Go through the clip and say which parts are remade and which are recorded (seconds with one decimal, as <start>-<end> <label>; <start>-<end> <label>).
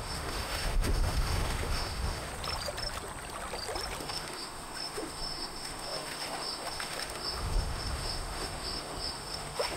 0.0-2.3 remade; 2.3-4.0 recorded; 4.0-9.8 remade